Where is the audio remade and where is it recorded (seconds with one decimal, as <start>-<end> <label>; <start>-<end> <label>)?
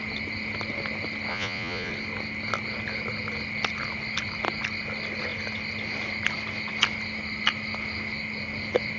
0.0-1.3 recorded; 1.3-1.9 remade; 1.9-9.0 recorded